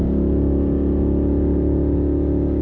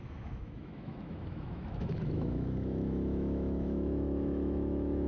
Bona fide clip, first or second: first